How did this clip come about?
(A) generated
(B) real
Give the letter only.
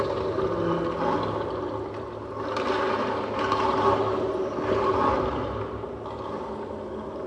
B